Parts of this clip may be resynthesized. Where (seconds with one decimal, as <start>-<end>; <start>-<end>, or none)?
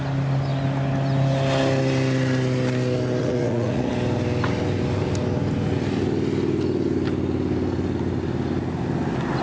3.2-3.9